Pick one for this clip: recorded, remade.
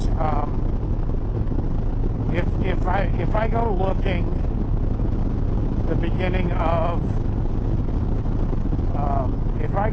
recorded